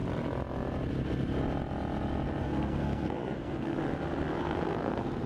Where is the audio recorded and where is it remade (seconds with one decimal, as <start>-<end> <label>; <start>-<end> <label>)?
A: 0.0-2.4 recorded; 2.4-3.8 remade; 3.8-4.4 recorded; 4.4-5.3 remade